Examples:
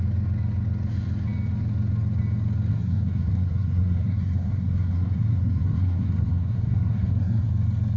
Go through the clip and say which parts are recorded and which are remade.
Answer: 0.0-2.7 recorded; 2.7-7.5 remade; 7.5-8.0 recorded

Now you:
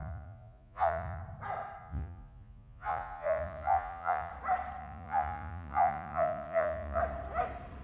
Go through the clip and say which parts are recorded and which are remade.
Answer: 0.0-1.2 remade; 1.2-1.8 recorded; 1.8-4.3 remade; 4.3-4.8 recorded; 4.8-7.0 remade; 7.0-7.8 recorded

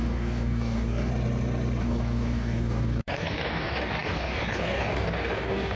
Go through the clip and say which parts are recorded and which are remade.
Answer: 0.0-1.1 remade; 1.1-1.8 recorded; 1.8-5.8 remade

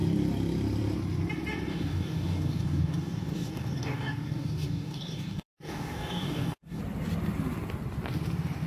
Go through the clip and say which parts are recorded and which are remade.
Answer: 0.0-1.7 recorded; 1.7-6.8 remade; 6.8-8.7 recorded

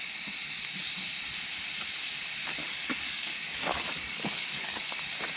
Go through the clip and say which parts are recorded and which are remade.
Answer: 0.0-2.6 recorded; 2.6-5.0 remade; 5.0-5.4 recorded